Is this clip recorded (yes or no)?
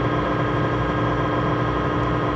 yes